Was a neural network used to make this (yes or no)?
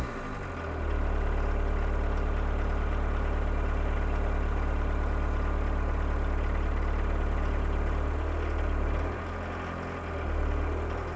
no